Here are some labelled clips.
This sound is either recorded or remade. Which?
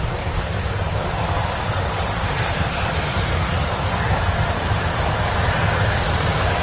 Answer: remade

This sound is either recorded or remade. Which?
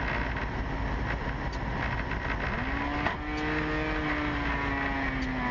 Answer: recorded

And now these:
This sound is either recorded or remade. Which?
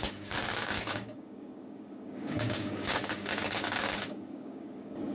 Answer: remade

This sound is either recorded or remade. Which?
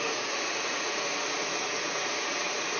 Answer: remade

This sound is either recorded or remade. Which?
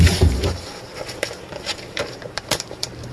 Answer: remade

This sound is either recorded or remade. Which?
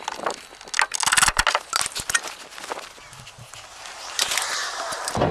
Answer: recorded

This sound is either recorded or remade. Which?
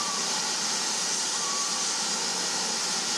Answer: recorded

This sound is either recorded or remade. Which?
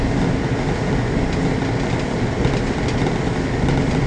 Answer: recorded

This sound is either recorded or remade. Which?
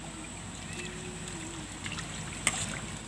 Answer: recorded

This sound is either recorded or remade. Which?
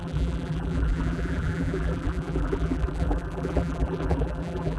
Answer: remade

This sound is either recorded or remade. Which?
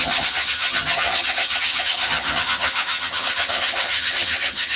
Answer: remade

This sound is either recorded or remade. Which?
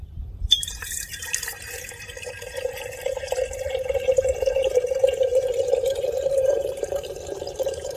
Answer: remade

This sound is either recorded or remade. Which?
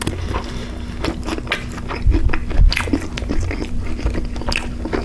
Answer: recorded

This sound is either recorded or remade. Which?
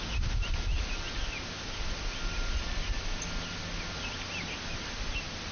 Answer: recorded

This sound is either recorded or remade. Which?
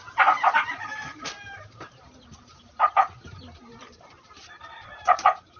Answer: remade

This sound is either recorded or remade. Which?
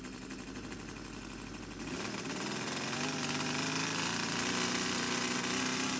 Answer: recorded